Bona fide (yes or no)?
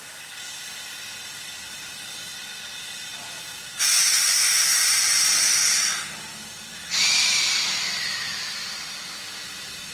yes